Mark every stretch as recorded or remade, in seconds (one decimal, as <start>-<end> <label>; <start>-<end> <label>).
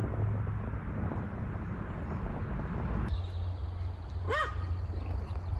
0.0-5.6 recorded